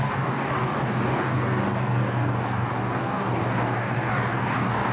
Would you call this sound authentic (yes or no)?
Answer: no